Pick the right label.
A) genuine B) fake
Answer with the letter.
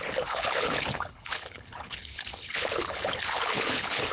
B